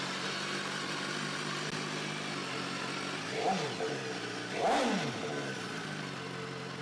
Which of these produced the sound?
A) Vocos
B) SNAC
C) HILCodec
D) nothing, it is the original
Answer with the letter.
D